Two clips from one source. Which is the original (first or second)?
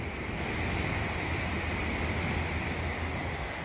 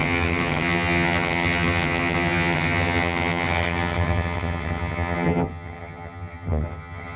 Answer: first